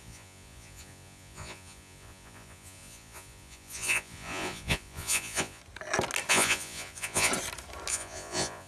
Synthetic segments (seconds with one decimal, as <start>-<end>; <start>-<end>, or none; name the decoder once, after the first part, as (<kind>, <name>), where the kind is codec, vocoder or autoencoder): 0.0-5.6 (vocoder, Vocos); 6.3-7.3; 7.9-8.7